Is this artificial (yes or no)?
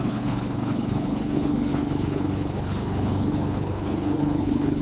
yes